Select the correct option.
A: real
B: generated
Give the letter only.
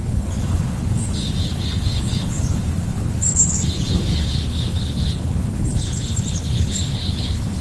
B